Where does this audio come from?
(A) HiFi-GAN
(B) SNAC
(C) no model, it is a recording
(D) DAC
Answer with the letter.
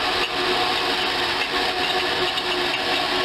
C